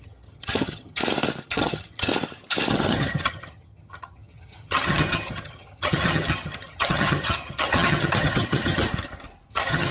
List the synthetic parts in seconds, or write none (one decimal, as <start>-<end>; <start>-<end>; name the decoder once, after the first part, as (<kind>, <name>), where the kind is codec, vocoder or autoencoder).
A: 0.0-1.0 (vocoder, HiFi-GAN); 1.5-2.1; 2.7-8.8; 9.5-9.9